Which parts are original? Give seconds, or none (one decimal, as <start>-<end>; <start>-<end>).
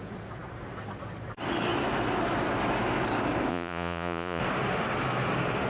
0.0-3.5; 4.4-5.7